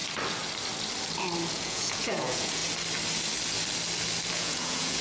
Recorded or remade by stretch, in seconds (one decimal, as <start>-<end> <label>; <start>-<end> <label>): 0.0-1.5 recorded; 1.5-2.6 remade; 2.6-4.3 recorded; 4.3-5.0 remade